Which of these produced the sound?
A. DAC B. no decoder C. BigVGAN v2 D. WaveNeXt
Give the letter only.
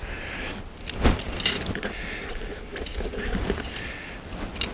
B